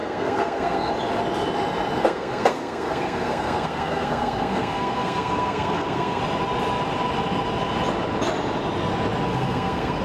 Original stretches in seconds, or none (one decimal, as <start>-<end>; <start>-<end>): 0.9-2.0; 6.2-9.3